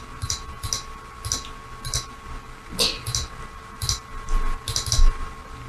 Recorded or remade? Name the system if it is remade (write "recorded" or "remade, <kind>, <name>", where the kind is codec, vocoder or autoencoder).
recorded